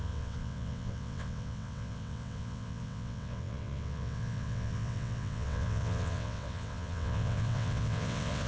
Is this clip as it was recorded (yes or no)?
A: no